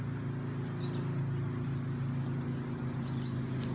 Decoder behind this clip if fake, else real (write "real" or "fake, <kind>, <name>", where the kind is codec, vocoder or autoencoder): real